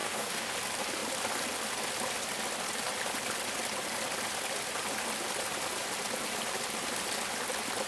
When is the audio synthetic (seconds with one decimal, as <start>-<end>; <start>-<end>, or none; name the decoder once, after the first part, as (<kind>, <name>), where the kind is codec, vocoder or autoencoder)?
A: 0.0-0.5 (codec, DAC)